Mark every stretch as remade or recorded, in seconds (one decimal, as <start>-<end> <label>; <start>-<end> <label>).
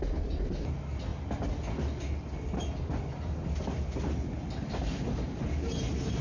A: 0.0-6.2 recorded